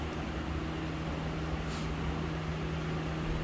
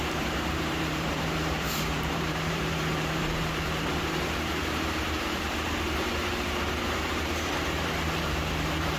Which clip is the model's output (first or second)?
second